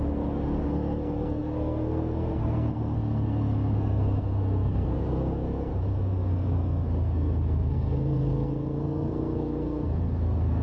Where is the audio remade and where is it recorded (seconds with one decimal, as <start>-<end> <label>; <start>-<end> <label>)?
0.0-10.6 remade